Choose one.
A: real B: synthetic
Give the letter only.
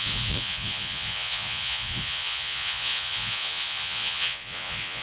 B